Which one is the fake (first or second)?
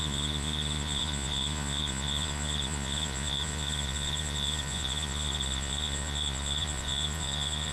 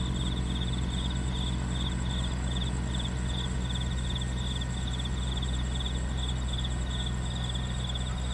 first